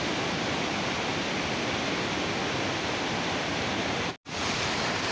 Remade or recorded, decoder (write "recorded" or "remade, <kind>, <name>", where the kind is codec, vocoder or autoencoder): recorded